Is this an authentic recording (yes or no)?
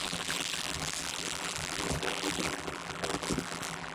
no